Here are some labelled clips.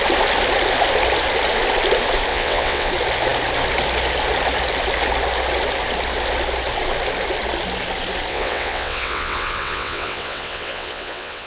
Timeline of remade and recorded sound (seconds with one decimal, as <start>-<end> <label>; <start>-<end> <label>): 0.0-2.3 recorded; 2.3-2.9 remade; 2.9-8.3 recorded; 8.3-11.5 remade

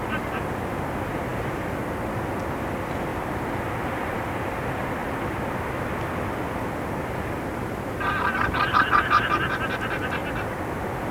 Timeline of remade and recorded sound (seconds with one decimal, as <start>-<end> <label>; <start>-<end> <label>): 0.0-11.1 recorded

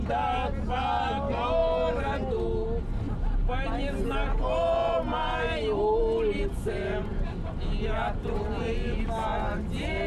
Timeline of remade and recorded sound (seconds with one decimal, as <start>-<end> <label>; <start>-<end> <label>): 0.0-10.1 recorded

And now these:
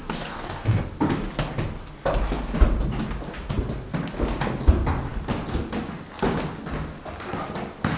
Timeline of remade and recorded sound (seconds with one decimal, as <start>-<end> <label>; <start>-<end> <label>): 0.0-0.8 remade; 0.8-8.0 recorded

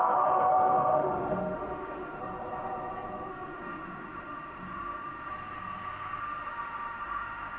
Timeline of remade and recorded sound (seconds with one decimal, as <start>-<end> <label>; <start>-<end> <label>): 0.0-2.2 remade; 2.2-3.3 recorded; 3.3-5.3 remade; 5.3-6.2 recorded; 6.2-7.6 remade